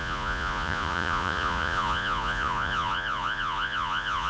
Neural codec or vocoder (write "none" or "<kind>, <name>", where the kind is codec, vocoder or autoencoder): vocoder, Vocos